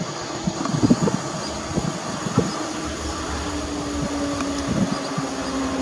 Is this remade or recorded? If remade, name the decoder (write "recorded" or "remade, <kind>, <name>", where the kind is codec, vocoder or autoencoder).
recorded